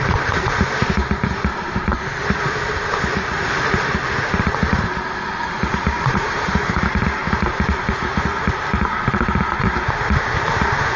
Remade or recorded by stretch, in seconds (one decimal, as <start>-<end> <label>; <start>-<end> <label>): 0.0-11.0 recorded

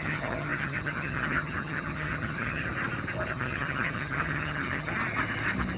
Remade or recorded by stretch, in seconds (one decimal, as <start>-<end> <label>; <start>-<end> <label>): 0.0-2.6 remade; 2.6-3.3 recorded; 3.3-4.9 remade; 4.9-5.8 recorded

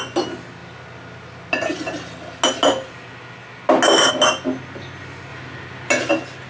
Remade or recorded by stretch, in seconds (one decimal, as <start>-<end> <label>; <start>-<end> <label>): 0.0-6.5 recorded